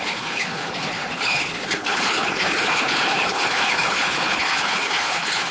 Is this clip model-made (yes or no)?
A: yes